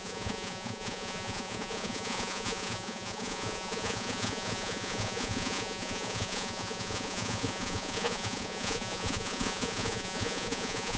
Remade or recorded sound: remade